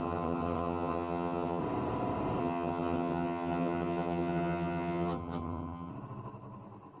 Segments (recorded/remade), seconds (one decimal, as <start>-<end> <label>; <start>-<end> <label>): 0.0-1.6 remade; 1.6-2.4 recorded; 2.4-5.9 remade; 5.9-7.0 recorded

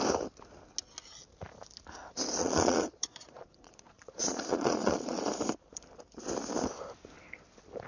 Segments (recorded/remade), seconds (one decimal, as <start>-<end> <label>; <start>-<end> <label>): 0.0-2.4 recorded; 2.4-5.3 remade; 5.3-7.9 recorded

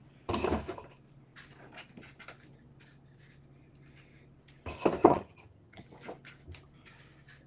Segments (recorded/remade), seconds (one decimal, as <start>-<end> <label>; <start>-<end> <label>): 0.0-5.0 recorded; 5.0-5.8 remade; 5.8-7.5 recorded

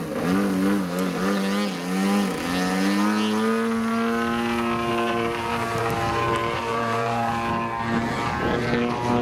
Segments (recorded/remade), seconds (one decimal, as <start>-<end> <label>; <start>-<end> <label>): 0.0-4.9 recorded; 4.9-7.3 remade; 7.3-9.2 recorded

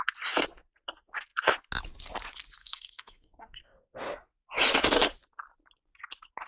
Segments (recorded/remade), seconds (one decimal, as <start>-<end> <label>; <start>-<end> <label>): 0.0-2.6 recorded; 2.6-3.6 remade; 3.6-6.5 recorded